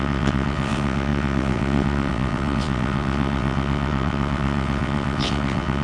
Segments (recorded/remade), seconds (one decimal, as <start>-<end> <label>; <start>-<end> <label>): 0.0-5.8 remade